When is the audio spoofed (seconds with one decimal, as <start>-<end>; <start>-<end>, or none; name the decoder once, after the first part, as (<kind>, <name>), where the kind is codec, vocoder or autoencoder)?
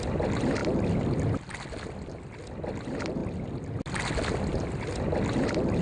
0.6-2.1 (vocoder, BigVGAN v2)